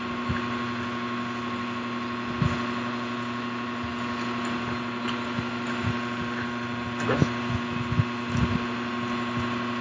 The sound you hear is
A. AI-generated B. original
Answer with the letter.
B